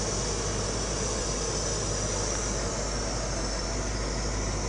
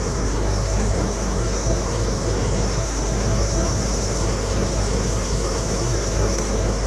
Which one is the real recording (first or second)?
first